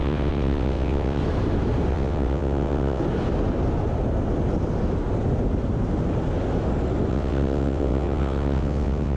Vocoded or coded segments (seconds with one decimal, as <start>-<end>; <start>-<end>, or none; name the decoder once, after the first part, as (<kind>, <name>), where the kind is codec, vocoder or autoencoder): 0.0-1.2 (vocoder, WaveNeXt); 1.9-3.0; 7.1-9.2